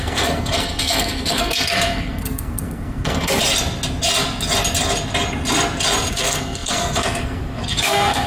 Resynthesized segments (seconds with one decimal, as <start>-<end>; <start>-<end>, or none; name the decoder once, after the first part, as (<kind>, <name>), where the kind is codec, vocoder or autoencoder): 0.0-3.4 (codec, SNAC); 6.1-8.3